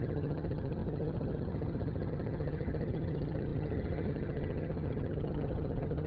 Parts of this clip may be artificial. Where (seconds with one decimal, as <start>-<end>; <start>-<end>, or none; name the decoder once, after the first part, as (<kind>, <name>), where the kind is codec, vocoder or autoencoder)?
0.0-6.1 (vocoder, HiFi-GAN)